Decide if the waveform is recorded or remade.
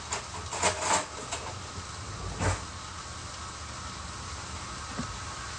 recorded